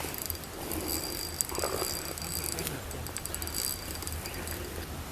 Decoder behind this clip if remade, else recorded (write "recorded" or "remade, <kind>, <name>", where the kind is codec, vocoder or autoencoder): recorded